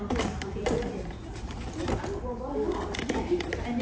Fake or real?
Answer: fake